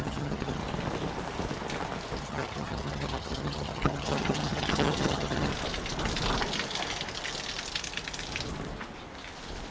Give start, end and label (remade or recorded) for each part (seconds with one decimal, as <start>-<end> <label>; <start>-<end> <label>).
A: 0.0-0.6 remade; 0.6-2.2 recorded; 2.2-5.5 remade; 5.5-9.7 recorded